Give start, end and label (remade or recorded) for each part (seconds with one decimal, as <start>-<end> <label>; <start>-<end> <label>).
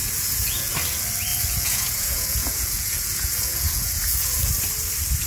0.0-0.7 remade; 0.7-1.3 recorded; 1.3-4.5 remade; 4.5-5.3 recorded